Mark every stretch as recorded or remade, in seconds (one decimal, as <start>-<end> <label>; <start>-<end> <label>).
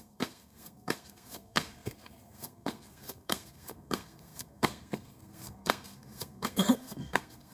0.0-7.5 remade